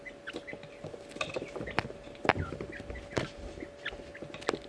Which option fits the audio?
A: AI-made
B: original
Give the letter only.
B